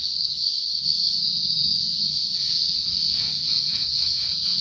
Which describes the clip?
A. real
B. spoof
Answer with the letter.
B